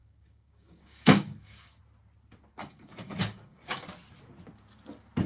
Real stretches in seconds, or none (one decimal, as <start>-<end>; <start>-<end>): 1.8-2.6; 3.9-5.3